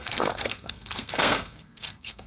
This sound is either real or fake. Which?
fake